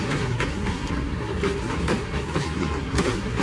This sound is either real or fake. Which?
fake